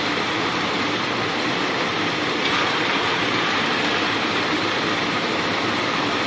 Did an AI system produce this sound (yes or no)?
yes